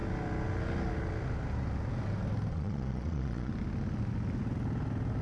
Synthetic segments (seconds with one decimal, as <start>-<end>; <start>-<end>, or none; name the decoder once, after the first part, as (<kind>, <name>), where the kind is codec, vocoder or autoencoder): 2.5-3.5 (vocoder, Vocos)